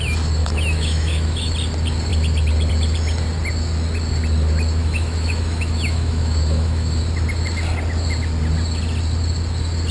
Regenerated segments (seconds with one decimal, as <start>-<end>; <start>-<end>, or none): 0.4-1.5; 4.8-7.0